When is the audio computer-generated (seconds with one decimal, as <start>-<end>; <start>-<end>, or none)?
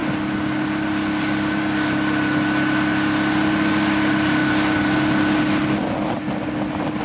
none